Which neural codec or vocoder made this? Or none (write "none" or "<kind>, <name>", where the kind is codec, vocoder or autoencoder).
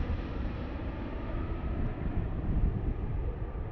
vocoder, BigVGAN v2